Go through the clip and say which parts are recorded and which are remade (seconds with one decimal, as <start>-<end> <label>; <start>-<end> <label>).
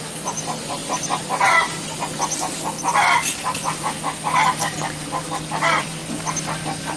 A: 0.0-7.0 recorded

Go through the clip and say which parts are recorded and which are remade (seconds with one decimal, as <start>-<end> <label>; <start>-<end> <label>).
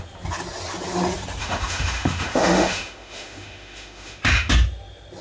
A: 0.0-1.4 recorded; 1.4-4.5 remade; 4.5-5.2 recorded